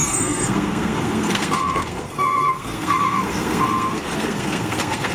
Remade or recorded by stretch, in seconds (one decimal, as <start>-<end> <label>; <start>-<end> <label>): 0.0-5.1 remade